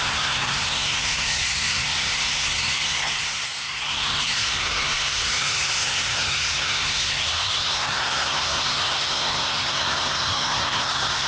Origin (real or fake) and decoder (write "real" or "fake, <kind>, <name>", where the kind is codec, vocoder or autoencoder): fake, codec, SNAC